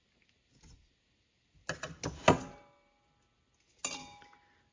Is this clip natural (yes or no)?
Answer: yes